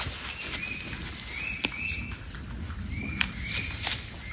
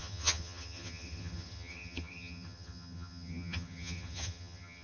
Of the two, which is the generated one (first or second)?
second